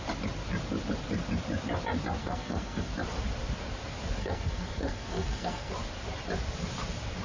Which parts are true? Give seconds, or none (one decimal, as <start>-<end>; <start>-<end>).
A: 0.0-2.2; 2.9-4.2; 5.7-7.2